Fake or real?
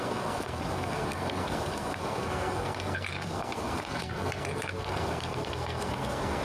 fake